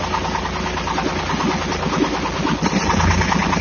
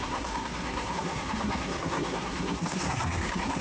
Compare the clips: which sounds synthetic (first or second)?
second